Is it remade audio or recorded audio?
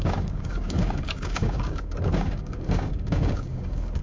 remade